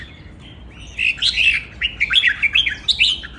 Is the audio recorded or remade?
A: recorded